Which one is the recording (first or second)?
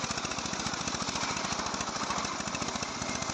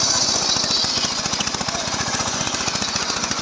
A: first